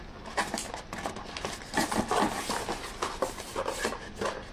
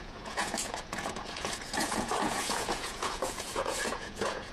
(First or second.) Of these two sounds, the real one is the first